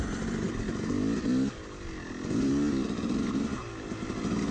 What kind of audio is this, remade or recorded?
recorded